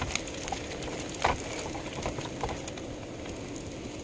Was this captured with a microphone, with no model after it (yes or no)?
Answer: yes